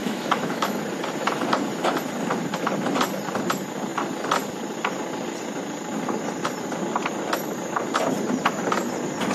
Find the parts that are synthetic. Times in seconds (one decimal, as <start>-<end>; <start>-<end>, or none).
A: 0.0-0.8